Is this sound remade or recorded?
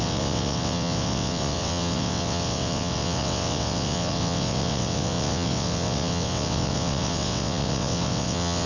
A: remade